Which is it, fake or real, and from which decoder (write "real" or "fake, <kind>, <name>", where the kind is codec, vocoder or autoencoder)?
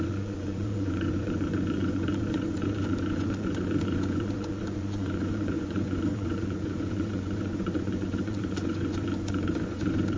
fake, vocoder, Vocos